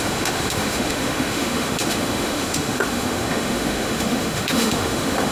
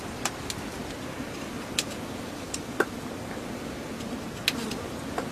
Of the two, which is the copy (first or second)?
first